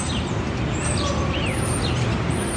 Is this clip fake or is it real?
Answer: real